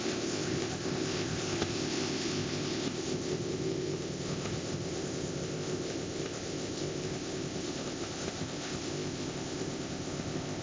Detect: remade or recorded remade